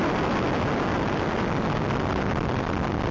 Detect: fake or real real